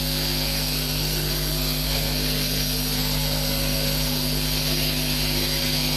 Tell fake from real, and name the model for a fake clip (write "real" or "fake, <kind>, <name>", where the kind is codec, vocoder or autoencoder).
fake, codec, SNAC